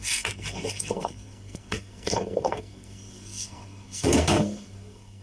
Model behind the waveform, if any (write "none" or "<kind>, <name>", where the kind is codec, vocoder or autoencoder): codec, SNAC